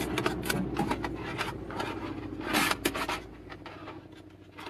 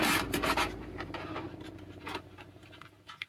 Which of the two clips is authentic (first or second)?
first